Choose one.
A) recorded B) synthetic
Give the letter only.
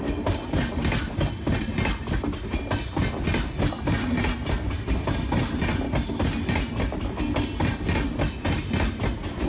A